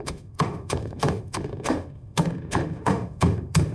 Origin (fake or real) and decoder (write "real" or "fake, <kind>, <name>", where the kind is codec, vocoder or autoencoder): fake, autoencoder, DAC-VAE